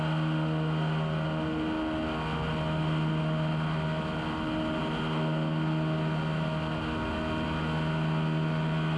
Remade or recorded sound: recorded